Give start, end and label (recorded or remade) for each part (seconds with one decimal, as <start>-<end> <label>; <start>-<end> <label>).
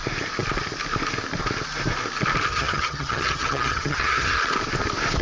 0.0-2.5 recorded; 2.5-4.4 remade; 4.4-5.2 recorded